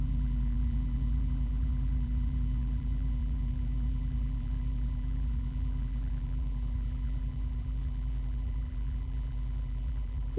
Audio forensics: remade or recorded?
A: remade